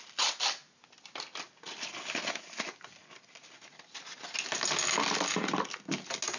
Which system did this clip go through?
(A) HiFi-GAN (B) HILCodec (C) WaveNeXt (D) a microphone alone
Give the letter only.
D